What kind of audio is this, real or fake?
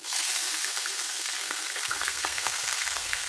fake